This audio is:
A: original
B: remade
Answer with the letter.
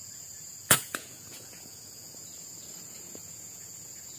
B